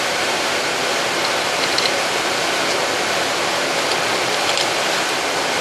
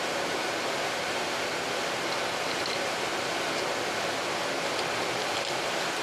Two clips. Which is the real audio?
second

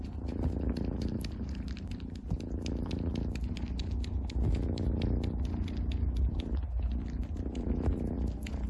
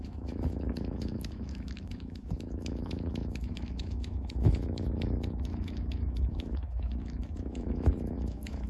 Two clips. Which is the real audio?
first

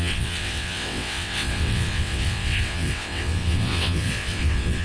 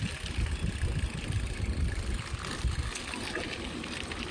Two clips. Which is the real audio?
second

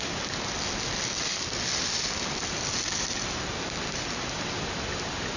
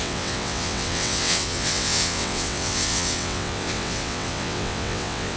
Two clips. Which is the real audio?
first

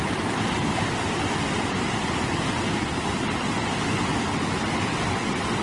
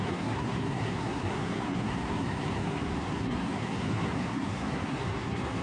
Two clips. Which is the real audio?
first